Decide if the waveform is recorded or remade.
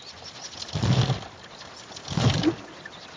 recorded